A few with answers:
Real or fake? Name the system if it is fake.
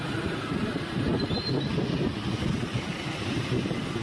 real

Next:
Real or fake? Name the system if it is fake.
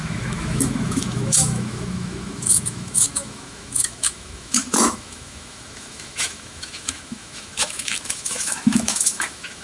fake, autoencoder, DAC-VAE